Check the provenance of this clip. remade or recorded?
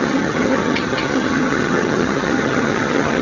remade